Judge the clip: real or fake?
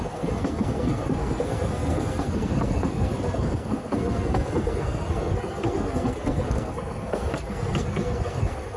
fake